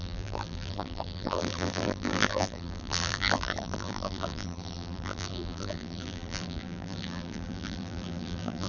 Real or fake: fake